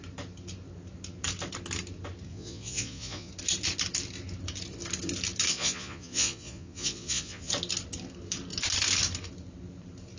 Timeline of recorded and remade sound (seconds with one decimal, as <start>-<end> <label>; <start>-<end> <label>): 0.0-2.3 recorded; 2.3-3.3 remade; 3.3-5.5 recorded; 5.5-7.5 remade; 7.5-10.2 recorded